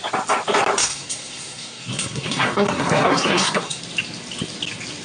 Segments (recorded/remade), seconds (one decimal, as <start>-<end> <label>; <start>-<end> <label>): 0.0-0.8 recorded; 0.8-3.8 remade; 3.8-5.0 recorded

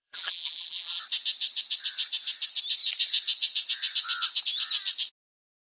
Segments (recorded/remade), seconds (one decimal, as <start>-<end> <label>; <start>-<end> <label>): 0.0-1.0 remade; 1.0-5.7 recorded